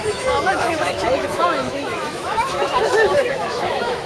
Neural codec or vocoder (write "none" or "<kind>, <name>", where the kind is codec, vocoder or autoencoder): autoencoder, DAC-VAE